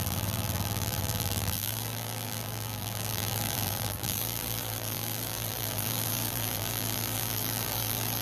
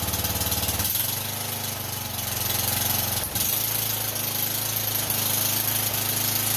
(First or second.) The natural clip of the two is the second